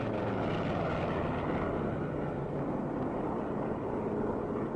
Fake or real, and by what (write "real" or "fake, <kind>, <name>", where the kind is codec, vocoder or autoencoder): real